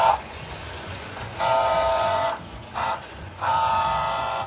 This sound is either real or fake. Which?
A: fake